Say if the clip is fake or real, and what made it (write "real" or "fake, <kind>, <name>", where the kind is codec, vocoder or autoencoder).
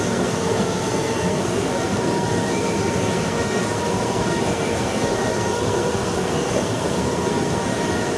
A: fake, codec, SNAC